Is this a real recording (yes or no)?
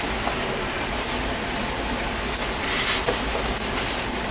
yes